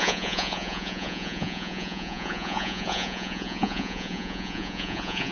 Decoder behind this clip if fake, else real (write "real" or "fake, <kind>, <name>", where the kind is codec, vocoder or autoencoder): fake, vocoder, Vocos